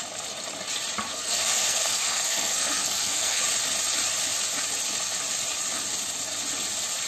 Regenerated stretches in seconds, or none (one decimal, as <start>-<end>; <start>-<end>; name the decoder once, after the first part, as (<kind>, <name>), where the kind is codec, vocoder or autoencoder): 1.1-3.4 (codec, SNAC)